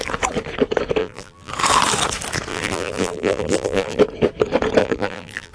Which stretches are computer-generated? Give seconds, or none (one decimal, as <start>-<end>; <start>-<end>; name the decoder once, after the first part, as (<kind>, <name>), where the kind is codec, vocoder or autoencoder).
1.0-1.5 (vocoder, BigVGAN v2); 2.5-4.0; 4.8-5.5